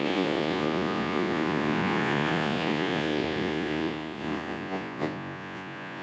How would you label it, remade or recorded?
remade